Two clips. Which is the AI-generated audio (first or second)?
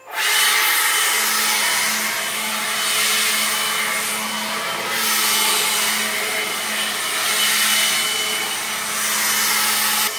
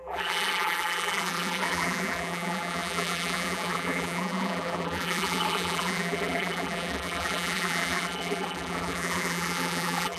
second